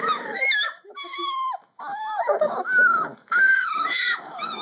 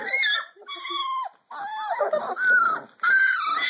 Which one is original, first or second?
second